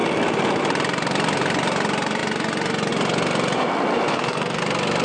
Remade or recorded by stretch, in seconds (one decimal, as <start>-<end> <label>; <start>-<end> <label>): 0.0-4.1 recorded; 4.1-4.6 remade; 4.6-5.0 recorded